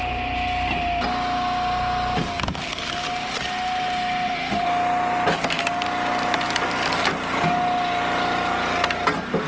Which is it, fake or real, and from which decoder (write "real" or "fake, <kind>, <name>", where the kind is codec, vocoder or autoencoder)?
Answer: real